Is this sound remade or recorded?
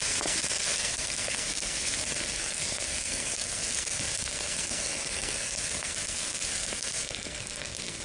remade